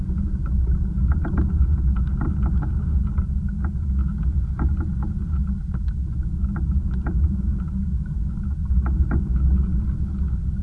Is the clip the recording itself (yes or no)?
yes